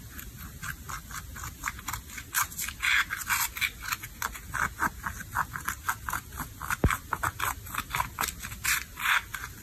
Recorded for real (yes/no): yes